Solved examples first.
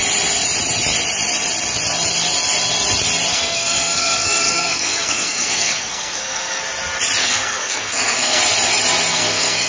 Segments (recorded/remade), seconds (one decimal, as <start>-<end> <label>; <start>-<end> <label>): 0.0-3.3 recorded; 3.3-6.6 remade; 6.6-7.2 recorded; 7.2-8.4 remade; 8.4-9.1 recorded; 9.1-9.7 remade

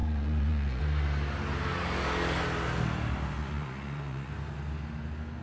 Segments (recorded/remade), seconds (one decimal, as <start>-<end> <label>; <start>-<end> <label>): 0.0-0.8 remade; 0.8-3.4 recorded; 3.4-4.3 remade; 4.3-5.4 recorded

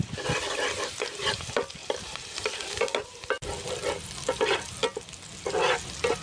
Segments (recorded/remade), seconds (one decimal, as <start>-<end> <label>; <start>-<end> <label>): 0.0-1.8 recorded; 1.8-2.5 remade; 2.5-6.2 recorded